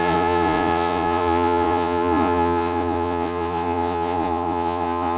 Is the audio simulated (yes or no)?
yes